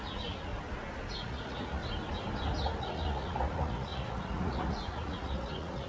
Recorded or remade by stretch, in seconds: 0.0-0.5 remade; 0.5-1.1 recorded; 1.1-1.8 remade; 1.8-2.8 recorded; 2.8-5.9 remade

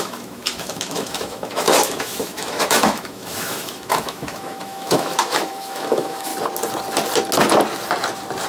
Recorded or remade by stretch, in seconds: 0.0-6.3 remade; 6.3-8.5 recorded

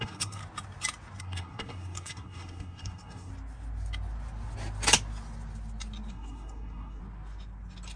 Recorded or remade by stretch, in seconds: 0.0-0.4 remade; 0.4-1.2 recorded; 1.2-3.3 remade; 3.3-6.1 recorded; 6.1-7.0 remade; 7.0-8.0 recorded

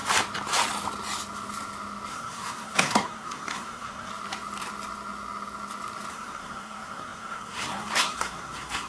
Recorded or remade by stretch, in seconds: 0.0-2.1 recorded; 2.1-4.1 remade; 4.1-6.1 recorded; 6.1-8.9 remade

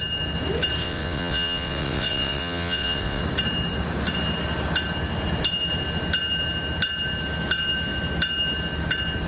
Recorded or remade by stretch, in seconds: 0.0-0.8 recorded; 0.8-3.2 remade; 3.2-9.3 recorded

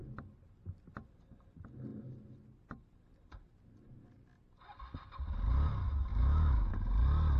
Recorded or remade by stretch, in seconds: 0.0-6.1 recorded; 6.1-6.7 remade; 6.7-7.4 recorded

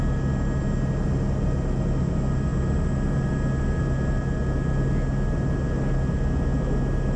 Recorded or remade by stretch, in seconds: 0.0-7.2 recorded

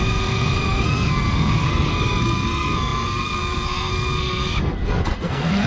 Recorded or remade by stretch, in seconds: 0.0-5.7 remade